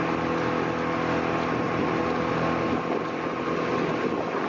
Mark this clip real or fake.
real